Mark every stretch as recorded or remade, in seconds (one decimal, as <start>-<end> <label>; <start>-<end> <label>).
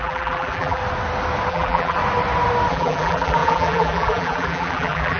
0.0-0.8 remade; 0.8-1.5 recorded; 1.5-2.0 remade; 2.0-2.7 recorded; 2.7-5.2 remade